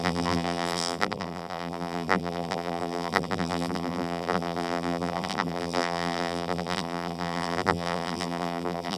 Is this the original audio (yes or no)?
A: no